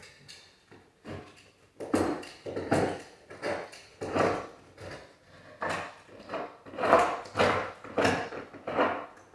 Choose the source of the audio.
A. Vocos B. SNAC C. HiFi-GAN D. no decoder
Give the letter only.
D